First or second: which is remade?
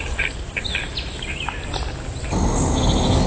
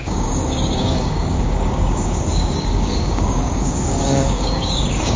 second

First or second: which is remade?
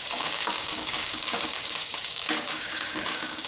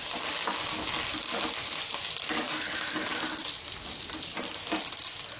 first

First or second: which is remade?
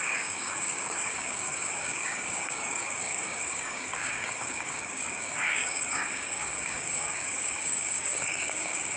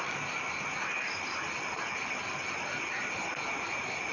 first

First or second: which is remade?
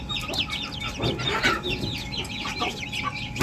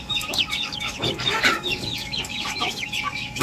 second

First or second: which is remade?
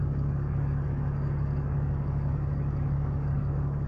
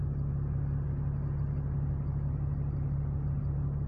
first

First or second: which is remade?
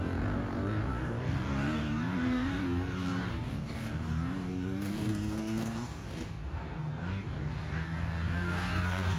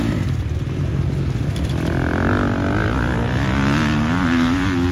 first